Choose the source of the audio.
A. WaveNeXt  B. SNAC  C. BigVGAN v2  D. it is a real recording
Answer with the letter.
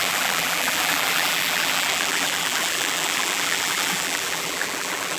C